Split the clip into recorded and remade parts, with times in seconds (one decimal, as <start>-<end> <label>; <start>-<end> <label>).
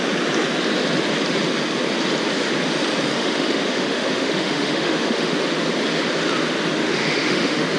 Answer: 0.0-3.1 recorded; 3.1-5.4 remade; 5.4-6.8 recorded; 6.8-7.8 remade